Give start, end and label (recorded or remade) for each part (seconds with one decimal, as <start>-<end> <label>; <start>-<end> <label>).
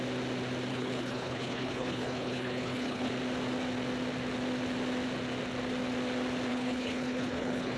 0.0-0.7 recorded; 0.7-3.1 remade; 3.1-6.5 recorded; 6.5-7.8 remade